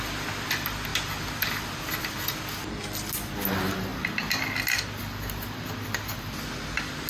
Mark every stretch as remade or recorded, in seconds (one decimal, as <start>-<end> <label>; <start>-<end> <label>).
0.0-7.1 recorded